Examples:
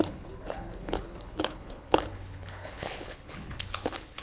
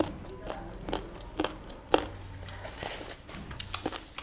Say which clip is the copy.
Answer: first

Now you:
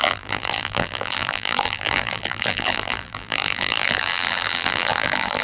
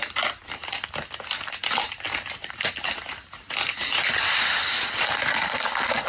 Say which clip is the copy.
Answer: first